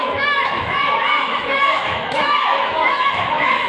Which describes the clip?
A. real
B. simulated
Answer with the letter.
B